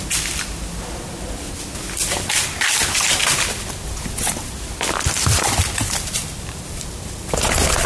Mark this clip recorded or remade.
recorded